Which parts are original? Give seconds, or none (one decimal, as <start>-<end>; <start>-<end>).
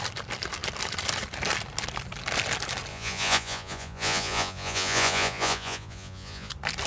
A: 0.0-2.9; 6.5-6.9